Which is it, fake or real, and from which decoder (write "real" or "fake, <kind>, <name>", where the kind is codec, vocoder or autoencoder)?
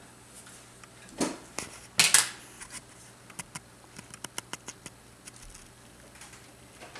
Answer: real